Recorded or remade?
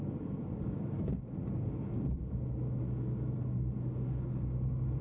remade